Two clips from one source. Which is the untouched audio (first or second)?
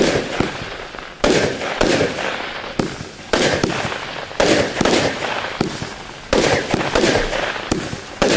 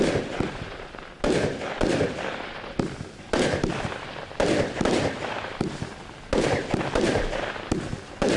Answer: first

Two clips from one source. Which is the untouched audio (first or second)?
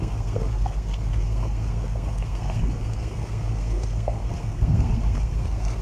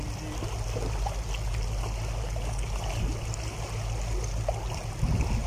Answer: second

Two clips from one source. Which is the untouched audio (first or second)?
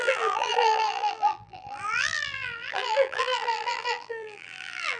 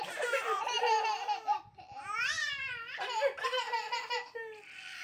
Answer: second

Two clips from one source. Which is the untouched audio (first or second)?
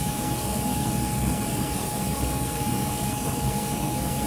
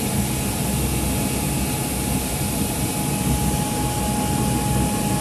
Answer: second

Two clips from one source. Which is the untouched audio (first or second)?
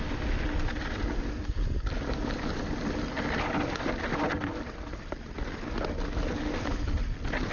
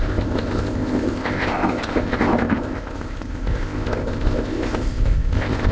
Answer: first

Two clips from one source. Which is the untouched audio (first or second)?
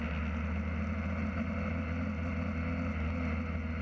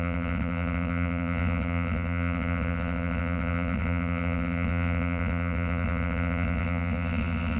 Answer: first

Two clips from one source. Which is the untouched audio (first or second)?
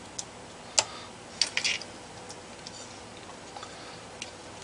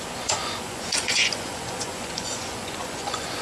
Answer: first